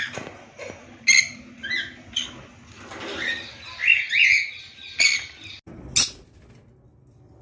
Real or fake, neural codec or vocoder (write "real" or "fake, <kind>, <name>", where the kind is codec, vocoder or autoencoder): real